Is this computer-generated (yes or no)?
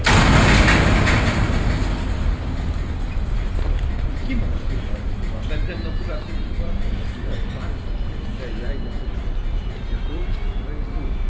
no